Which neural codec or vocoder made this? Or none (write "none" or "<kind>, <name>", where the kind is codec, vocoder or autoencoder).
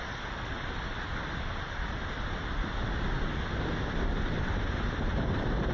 none